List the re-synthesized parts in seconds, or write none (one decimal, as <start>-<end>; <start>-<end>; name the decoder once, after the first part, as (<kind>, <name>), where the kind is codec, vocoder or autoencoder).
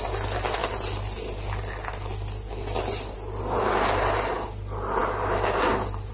none